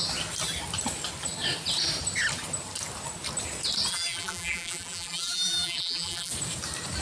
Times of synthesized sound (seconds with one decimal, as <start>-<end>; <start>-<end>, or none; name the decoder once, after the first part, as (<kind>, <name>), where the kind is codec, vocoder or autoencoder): 3.9-6.3 (vocoder, BigVGAN v2)